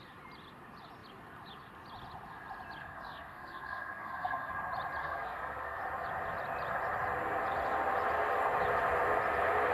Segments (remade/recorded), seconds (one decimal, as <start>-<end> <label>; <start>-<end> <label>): 0.0-2.8 recorded; 2.8-4.5 remade; 4.5-5.0 recorded; 5.0-5.8 remade; 5.8-9.7 recorded